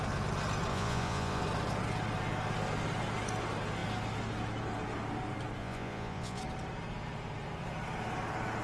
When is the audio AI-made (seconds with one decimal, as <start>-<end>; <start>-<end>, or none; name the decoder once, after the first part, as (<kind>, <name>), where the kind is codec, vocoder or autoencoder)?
0.7-1.4 (vocoder, Vocos); 5.6-6.4